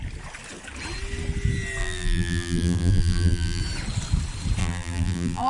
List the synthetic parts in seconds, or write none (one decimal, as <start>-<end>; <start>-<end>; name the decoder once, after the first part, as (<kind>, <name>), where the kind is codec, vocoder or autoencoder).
1.8-3.6 (vocoder, BigVGAN v2); 4.6-5.5